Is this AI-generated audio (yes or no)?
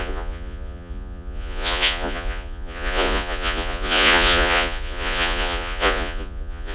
yes